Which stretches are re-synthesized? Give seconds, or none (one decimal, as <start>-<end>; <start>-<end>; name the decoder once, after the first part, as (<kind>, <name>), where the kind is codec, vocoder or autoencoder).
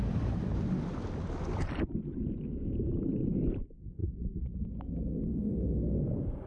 none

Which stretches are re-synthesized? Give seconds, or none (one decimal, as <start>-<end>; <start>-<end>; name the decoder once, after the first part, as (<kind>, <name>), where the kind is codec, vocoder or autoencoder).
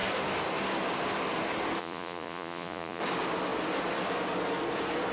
1.8-3.0 (vocoder, Vocos)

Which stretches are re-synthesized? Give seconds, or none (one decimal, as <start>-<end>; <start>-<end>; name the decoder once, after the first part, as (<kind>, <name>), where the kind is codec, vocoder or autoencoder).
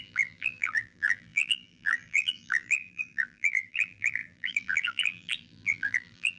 0.0-6.4 (vocoder, BigVGAN v2)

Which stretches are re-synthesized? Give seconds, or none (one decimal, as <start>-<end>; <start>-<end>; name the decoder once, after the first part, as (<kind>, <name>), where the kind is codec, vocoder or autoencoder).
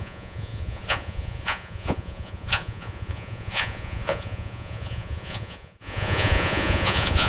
0.0-7.3 (vocoder, Vocos)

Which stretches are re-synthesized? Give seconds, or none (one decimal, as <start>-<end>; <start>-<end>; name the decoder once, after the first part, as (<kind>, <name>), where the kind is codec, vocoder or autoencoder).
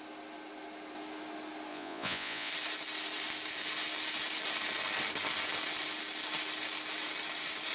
1.7-2.5 (vocoder, Vocos)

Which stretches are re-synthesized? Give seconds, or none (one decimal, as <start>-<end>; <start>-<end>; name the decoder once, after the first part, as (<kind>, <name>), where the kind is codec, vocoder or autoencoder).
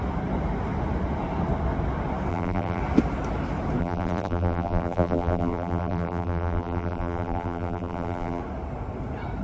2.3-2.8 (vocoder, BigVGAN v2); 3.8-8.4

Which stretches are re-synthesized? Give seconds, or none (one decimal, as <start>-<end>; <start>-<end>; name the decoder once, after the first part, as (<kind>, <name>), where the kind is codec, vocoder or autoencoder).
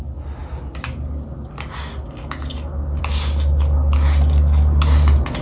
none